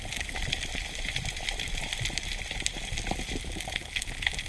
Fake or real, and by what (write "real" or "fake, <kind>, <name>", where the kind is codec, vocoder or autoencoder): real